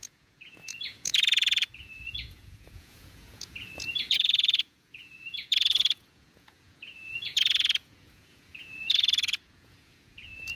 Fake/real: fake